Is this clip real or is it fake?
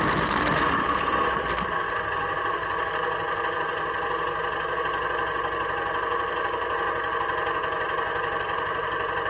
real